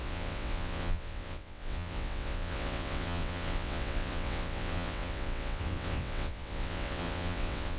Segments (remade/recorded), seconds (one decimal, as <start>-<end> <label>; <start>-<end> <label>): 0.0-7.8 remade